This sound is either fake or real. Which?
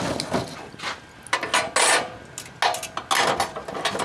real